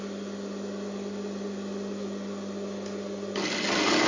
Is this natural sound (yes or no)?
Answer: yes